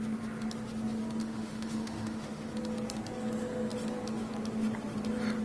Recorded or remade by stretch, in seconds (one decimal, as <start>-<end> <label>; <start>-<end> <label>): 0.0-1.2 recorded; 1.2-2.5 remade; 2.5-5.4 recorded